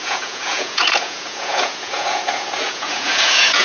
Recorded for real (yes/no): no